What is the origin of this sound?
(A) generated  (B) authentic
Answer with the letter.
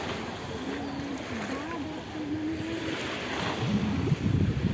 B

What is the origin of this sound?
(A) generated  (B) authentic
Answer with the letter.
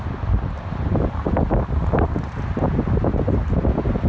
B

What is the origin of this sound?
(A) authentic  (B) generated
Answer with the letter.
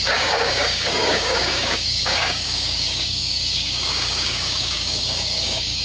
B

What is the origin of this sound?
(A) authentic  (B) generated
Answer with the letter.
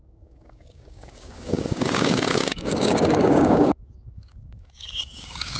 B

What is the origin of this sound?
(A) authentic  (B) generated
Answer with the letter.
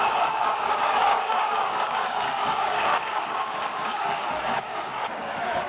B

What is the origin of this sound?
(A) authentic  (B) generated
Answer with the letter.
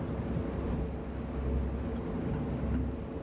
A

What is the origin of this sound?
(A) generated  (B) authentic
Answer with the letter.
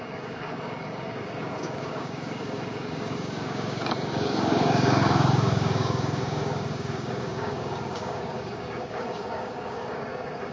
A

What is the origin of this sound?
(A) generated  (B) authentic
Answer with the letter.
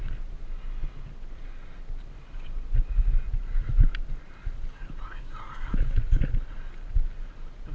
B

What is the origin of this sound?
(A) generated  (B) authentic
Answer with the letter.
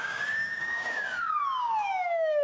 A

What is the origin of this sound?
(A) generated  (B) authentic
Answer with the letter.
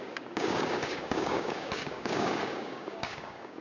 A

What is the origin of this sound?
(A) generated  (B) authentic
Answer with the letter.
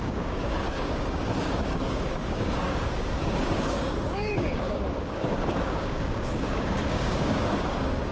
A